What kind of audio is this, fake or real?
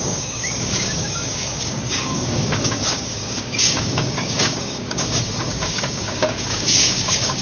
fake